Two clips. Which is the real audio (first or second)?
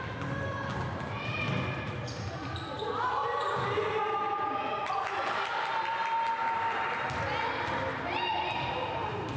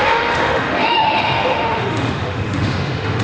first